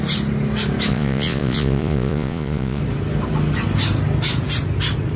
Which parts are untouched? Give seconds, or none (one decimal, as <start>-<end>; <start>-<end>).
0.0-0.9; 2.8-5.2